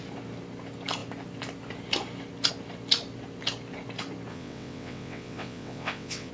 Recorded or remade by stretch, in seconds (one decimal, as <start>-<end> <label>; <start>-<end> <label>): 0.0-4.3 recorded; 4.3-6.3 remade